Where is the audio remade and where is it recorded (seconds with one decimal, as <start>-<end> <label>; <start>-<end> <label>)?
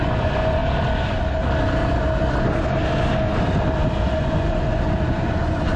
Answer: 0.0-0.6 remade; 0.6-4.1 recorded; 4.1-5.8 remade